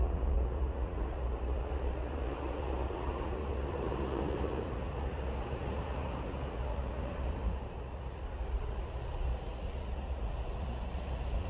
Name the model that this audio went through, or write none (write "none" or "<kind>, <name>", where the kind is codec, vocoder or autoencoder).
vocoder, Vocos